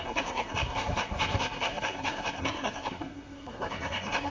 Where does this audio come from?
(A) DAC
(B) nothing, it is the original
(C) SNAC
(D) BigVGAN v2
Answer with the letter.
C